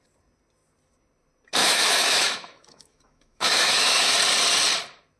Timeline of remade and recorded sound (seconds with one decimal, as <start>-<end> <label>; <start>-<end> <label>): 0.0-1.6 recorded; 1.6-4.1 remade; 4.1-5.2 recorded